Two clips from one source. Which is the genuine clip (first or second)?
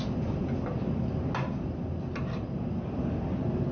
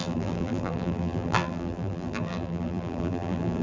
first